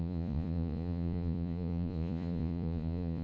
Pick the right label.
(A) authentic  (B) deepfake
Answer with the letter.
B